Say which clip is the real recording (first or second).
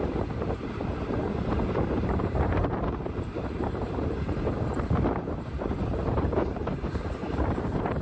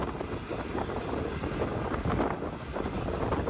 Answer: second